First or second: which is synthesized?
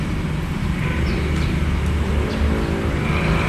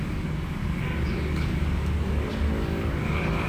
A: second